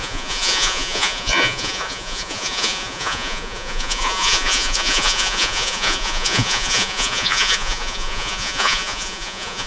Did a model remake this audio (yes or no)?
yes